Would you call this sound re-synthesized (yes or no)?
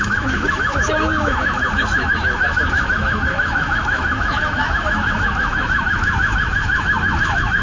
yes